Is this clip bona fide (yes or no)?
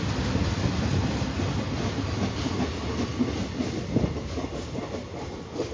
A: yes